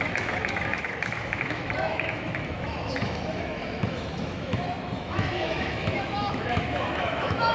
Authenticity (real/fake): fake